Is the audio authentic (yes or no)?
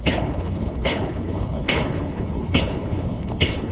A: no